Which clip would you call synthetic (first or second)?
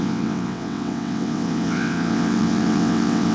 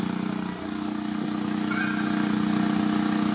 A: first